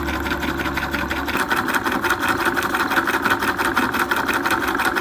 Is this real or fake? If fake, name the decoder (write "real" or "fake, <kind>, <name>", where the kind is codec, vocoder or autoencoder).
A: real